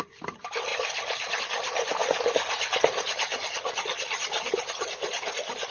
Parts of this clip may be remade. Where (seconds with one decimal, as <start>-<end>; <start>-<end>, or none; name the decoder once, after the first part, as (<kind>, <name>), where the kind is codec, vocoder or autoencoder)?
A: none